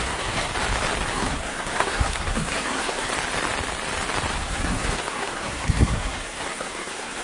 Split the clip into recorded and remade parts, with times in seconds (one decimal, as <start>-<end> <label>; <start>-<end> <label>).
0.0-0.5 remade; 0.5-1.1 recorded; 1.1-3.1 remade; 3.1-4.3 recorded; 4.3-7.2 remade